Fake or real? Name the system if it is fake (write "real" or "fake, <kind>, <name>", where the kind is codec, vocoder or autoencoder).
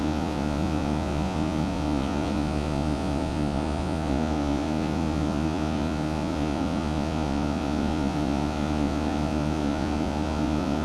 fake, vocoder, Vocos